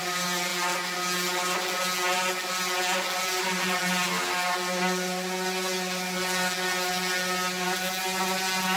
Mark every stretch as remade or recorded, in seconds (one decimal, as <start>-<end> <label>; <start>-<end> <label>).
0.0-0.5 remade; 0.5-3.2 recorded; 3.2-3.8 remade; 3.8-8.8 recorded